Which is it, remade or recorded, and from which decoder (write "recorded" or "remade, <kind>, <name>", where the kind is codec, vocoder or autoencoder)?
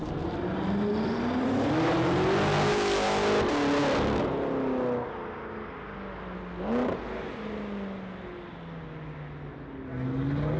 recorded